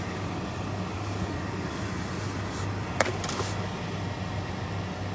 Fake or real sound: real